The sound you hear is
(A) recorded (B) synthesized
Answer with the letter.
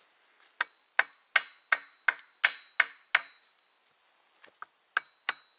A